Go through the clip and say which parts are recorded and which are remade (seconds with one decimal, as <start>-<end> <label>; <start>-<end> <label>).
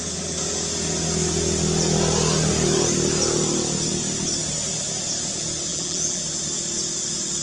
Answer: 0.0-5.7 recorded; 5.7-6.2 remade; 6.2-7.4 recorded